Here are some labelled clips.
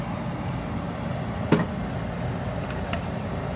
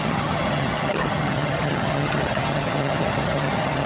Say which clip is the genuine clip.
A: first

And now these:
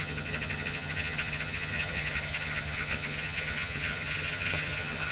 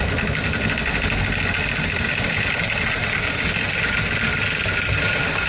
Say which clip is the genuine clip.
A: second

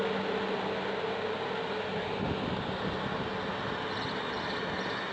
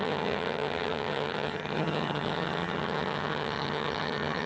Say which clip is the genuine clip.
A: first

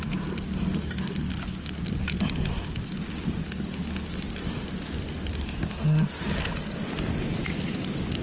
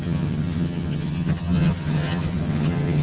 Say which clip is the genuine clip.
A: first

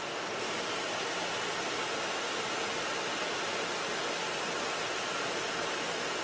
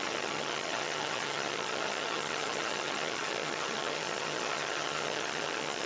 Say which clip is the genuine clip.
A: first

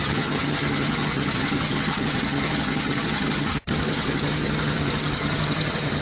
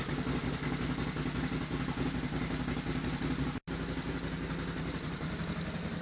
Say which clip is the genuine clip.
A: second